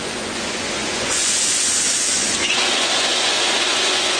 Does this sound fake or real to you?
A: fake